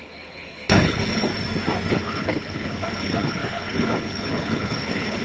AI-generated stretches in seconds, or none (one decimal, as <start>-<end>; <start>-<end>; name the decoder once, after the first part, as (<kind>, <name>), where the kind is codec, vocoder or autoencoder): 0.0-1.3 (codec, HILCodec); 1.9-5.2